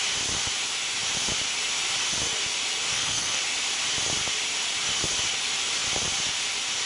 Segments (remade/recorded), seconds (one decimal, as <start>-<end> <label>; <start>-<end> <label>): 0.0-2.9 recorded; 2.9-3.4 remade; 3.4-6.9 recorded